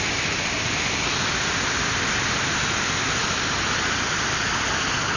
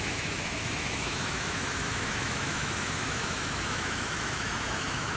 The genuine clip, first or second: first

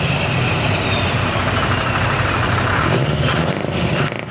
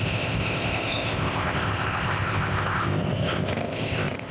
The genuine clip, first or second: first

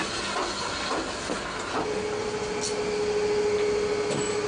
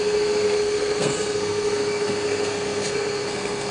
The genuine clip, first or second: first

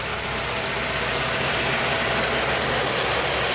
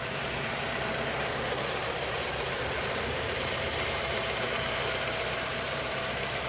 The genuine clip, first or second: first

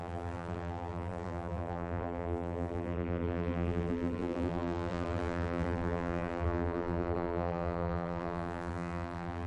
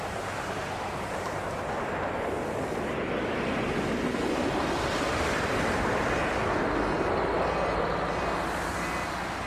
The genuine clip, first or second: second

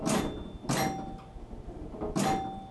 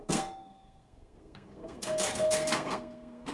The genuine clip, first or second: first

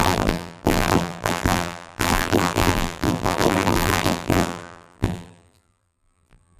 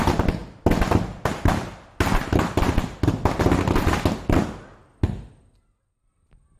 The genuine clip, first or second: second